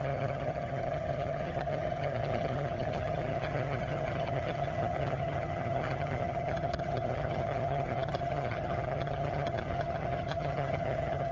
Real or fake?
fake